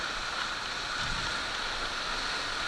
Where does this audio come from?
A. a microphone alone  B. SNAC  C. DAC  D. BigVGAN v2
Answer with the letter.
A